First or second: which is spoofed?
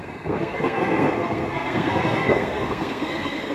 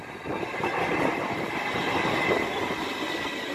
first